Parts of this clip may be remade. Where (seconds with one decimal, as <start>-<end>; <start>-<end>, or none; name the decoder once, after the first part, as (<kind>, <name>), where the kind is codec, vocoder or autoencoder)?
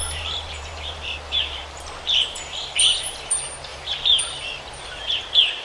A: 0.0-1.6 (vocoder, BigVGAN v2); 2.2-5.6